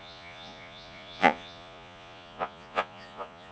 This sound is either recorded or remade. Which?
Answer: remade